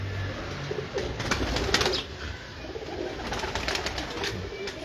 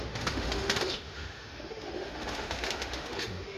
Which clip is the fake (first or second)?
second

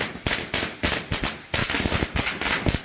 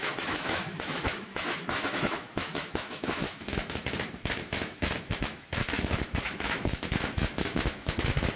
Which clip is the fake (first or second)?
second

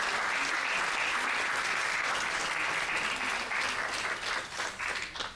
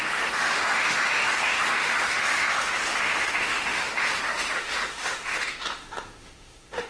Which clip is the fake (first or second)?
second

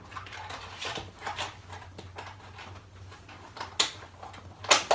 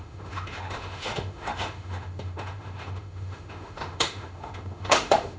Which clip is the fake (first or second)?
second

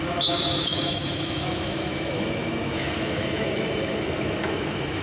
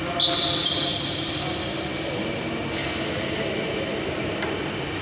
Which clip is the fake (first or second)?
first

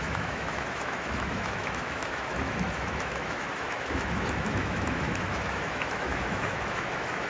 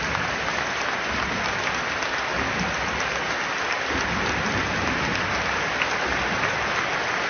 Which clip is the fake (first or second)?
first